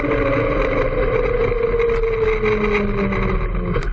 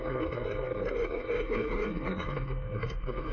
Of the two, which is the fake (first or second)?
second